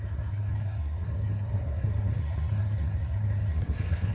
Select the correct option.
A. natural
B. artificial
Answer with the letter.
B